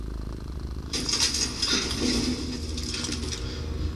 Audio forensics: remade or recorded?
recorded